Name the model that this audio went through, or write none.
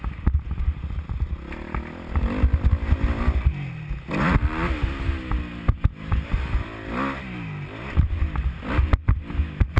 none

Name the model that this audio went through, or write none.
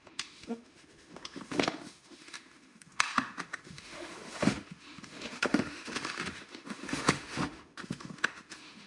autoencoder, DAC-VAE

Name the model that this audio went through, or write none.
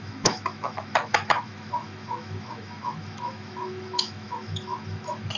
autoencoder, DAC-VAE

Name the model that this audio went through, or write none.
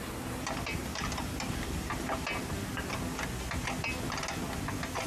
none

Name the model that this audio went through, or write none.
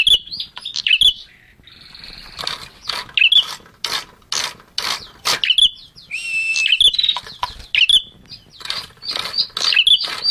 none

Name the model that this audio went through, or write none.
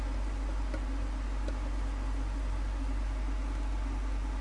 none